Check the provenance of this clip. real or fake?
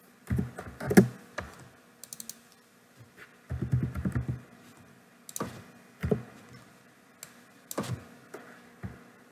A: real